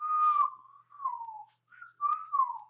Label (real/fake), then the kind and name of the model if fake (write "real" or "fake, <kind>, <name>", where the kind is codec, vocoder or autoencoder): real